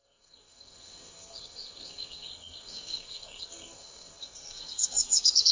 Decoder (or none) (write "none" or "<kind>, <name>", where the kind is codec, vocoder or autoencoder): codec, SNAC